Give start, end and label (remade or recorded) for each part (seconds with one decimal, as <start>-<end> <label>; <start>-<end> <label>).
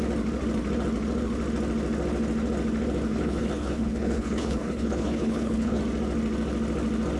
0.0-3.1 recorded; 3.1-5.8 remade; 5.8-7.2 recorded